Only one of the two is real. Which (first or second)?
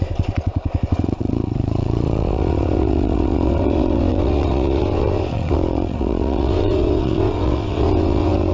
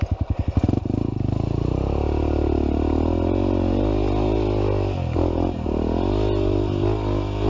second